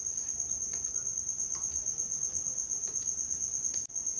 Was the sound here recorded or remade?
recorded